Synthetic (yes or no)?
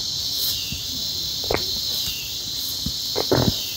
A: yes